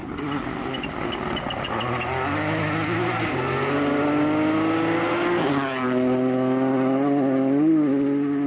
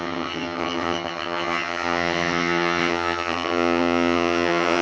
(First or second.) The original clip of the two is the first